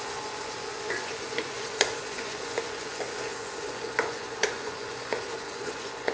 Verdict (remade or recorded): remade